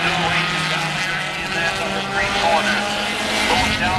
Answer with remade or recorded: recorded